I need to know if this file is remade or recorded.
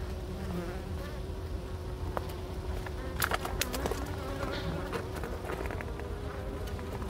recorded